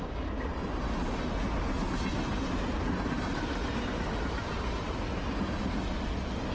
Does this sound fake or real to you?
real